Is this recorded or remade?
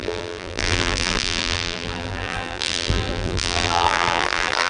remade